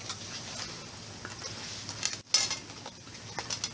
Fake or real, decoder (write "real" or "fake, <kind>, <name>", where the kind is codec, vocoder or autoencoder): real